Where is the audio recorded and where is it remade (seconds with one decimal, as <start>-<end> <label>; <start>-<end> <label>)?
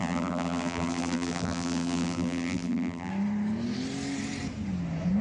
0.0-3.1 remade; 3.1-5.2 recorded